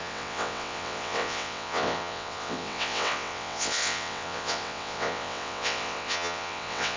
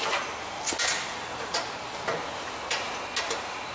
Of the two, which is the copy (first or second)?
first